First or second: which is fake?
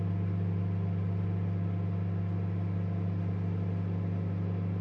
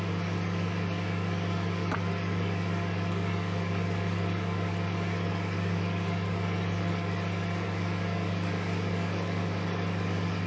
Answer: second